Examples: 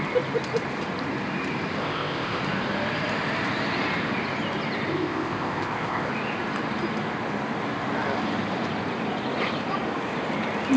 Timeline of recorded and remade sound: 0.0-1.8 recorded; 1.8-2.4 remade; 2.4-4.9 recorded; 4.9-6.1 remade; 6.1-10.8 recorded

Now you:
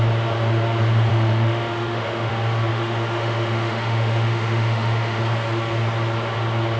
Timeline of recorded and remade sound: 0.0-1.1 recorded; 1.1-2.3 remade; 2.3-2.7 recorded; 2.7-5.2 remade; 5.2-6.8 recorded

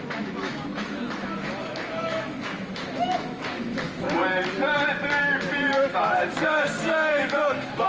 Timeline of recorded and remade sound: 0.0-4.2 remade; 4.2-5.2 recorded; 5.2-7.9 remade